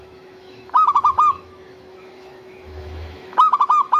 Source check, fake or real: fake